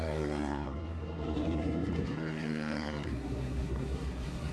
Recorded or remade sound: remade